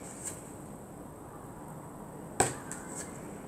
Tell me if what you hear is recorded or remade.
recorded